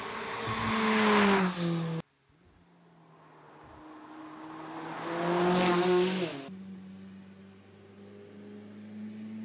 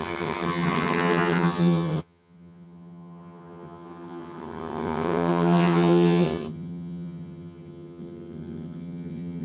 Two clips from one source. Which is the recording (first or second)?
first